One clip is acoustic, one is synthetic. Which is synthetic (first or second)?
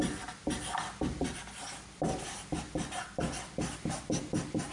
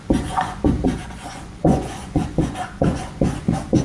second